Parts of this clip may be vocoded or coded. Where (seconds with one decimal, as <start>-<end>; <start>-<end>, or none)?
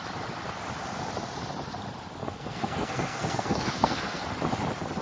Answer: 2.2-4.2